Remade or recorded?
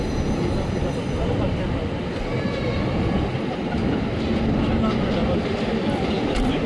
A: recorded